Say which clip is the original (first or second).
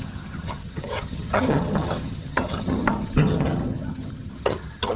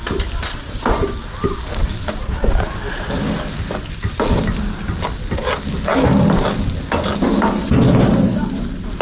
second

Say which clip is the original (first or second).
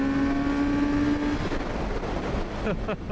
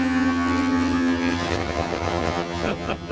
first